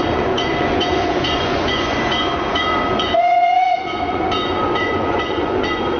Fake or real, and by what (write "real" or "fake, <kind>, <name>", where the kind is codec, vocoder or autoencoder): fake, vocoder, Vocos